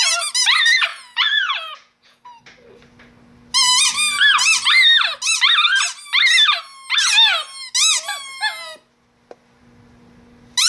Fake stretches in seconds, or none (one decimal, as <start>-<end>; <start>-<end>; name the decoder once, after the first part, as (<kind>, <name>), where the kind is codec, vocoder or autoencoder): 0.9-2.2 (vocoder, Vocos)